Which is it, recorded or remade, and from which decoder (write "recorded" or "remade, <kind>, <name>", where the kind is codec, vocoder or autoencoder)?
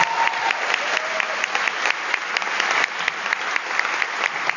recorded